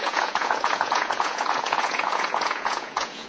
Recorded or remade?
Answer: remade